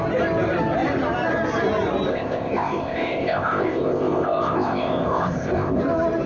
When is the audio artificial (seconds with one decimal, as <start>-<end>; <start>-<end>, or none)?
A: 2.1-5.8